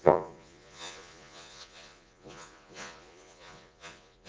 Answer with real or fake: fake